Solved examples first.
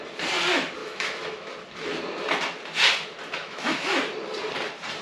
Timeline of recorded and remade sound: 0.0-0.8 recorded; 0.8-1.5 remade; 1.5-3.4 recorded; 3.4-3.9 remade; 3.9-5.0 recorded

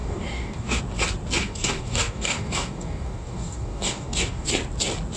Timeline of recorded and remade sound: 0.0-0.8 remade; 0.8-1.4 recorded; 1.4-4.5 remade; 4.5-5.2 recorded

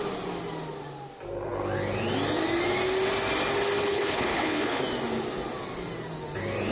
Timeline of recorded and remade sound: 0.0-3.8 recorded; 3.8-4.8 remade; 4.8-6.7 recorded

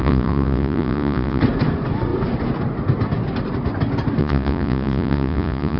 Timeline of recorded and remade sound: 0.0-1.4 remade; 1.4-4.2 recorded; 4.2-5.8 remade